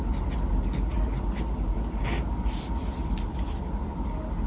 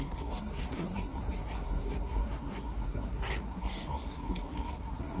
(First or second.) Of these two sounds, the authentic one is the first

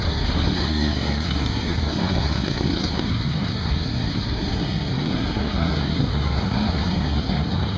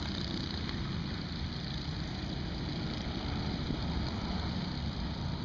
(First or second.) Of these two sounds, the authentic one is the second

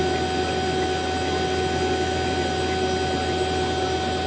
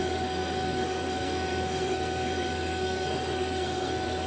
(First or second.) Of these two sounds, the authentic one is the first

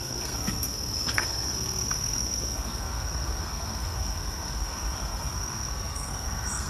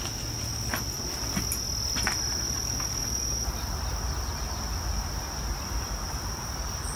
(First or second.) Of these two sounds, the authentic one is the second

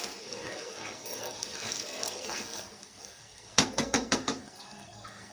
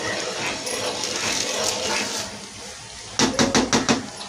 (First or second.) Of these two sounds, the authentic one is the second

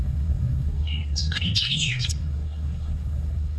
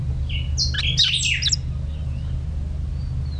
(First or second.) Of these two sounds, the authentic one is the second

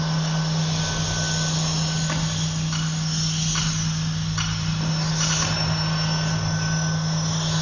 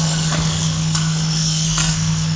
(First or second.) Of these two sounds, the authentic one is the first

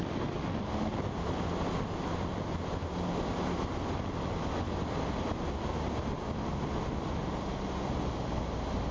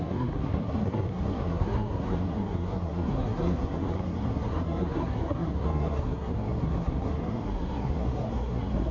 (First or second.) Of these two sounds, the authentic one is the first